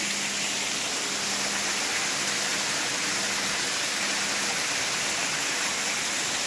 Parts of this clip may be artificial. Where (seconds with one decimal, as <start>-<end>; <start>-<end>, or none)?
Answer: none